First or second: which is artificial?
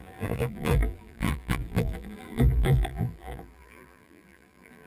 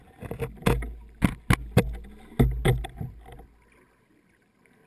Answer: first